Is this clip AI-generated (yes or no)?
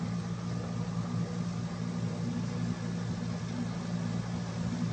no